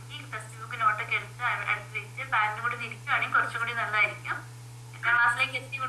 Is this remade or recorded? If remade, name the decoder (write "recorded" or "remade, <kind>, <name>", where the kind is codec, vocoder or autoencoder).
recorded